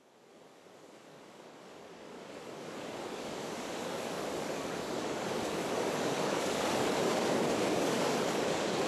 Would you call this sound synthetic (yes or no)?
yes